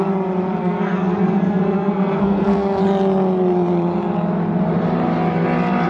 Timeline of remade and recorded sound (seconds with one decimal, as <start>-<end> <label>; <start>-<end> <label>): 0.0-0.6 recorded; 0.6-2.8 remade; 2.8-5.9 recorded